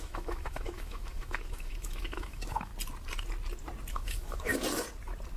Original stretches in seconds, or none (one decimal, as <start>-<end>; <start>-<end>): 2.7-3.9; 4.5-5.4